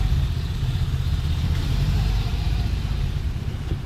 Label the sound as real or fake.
fake